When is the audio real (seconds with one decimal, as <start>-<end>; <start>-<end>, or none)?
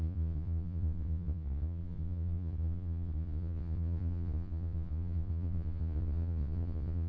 none